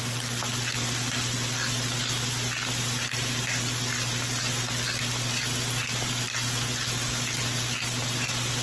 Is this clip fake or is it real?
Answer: real